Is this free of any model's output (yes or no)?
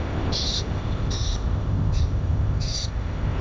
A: no